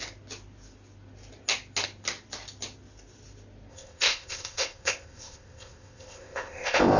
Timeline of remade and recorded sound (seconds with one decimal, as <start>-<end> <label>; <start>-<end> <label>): 0.0-3.7 recorded; 3.7-7.0 remade